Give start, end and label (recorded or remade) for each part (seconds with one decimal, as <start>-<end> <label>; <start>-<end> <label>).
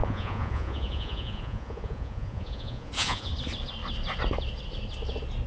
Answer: 0.0-3.3 remade; 3.3-5.5 recorded